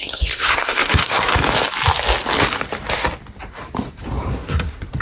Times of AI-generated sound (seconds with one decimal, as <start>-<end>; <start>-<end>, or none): 0.0-1.3; 4.3-5.0